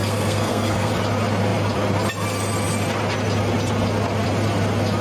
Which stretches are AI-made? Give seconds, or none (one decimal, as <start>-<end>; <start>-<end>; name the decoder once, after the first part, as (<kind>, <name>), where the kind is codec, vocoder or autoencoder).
0.0-0.9 (codec, SNAC)